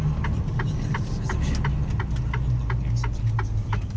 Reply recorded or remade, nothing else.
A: recorded